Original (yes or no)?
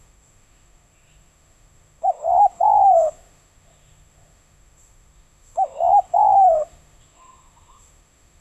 no